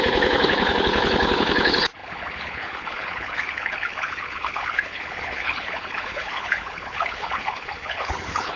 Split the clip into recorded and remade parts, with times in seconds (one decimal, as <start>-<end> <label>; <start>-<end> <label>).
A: 0.0-8.6 remade

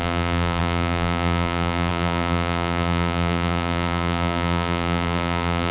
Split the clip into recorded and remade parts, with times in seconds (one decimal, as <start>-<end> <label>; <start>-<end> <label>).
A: 0.0-5.7 remade

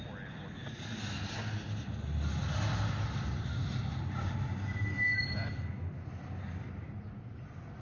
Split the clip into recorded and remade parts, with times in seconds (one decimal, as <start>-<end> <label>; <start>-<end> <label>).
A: 0.0-7.8 recorded

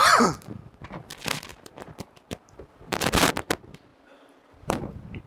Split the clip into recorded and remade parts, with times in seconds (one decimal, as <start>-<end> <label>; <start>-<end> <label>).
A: 0.0-1.5 recorded; 1.5-3.3 remade; 3.3-3.9 recorded; 3.9-5.3 remade